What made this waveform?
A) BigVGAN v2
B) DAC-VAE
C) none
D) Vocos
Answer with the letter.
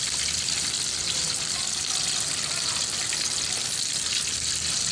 C